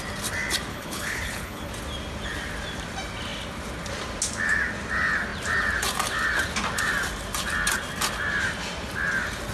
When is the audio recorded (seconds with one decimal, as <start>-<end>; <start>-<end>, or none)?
0.0-0.7; 1.7-9.5